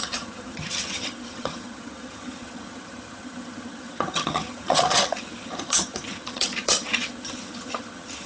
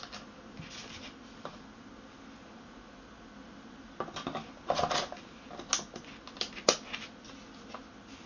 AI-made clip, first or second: first